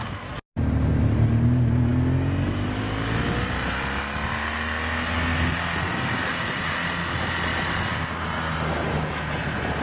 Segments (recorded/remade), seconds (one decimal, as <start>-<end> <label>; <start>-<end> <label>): 0.0-9.8 recorded